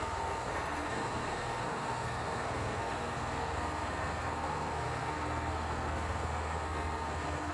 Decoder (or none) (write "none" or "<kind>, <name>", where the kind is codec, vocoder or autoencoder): codec, SNAC